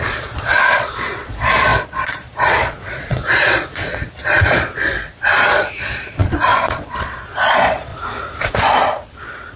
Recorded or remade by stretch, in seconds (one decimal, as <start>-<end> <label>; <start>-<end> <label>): 0.0-7.9 remade; 7.9-8.6 recorded; 8.6-9.6 remade